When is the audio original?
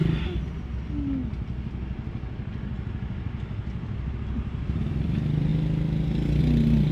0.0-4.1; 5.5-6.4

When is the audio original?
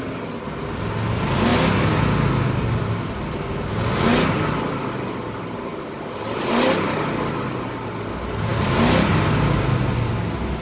0.0-10.6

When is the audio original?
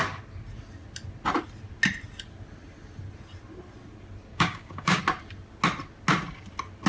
0.0-4.3; 5.0-6.9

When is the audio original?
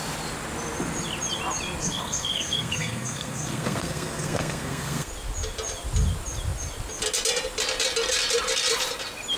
0.0-1.8; 5.1-9.4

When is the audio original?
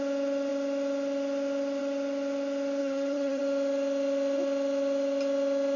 0.0-2.8; 3.4-5.8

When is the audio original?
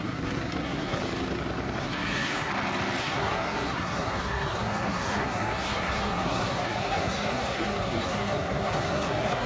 1.0-1.8; 2.5-3.0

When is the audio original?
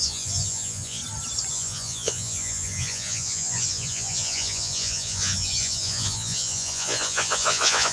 1.0-1.5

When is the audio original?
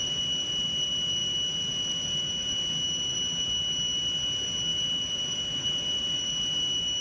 0.0-7.0